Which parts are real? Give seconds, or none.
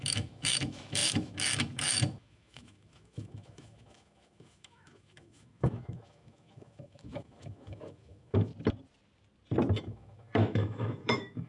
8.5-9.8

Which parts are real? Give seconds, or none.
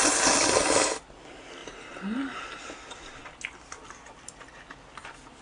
0.0-5.4